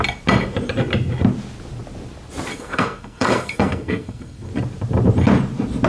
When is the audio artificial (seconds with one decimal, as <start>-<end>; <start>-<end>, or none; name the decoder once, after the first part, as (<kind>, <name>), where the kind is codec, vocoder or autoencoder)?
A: 2.5-4.5 (codec, SNAC)